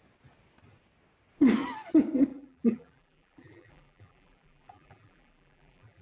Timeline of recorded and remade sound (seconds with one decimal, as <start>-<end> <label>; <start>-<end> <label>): 0.0-2.3 recorded; 2.3-6.0 remade